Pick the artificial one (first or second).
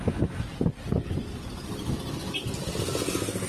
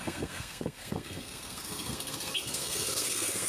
second